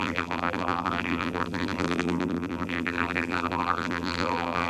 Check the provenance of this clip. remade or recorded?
remade